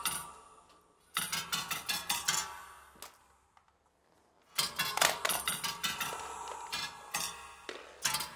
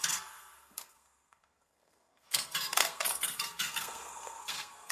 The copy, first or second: second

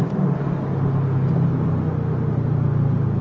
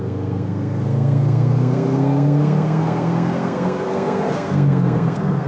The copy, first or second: second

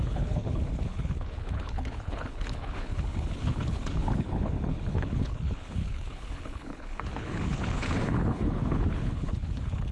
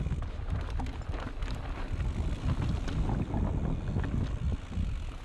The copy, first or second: first